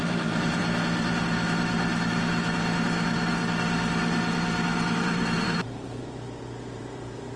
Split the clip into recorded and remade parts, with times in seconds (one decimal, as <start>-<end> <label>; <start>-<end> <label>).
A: 0.0-0.6 remade; 0.6-5.0 recorded; 5.0-7.4 remade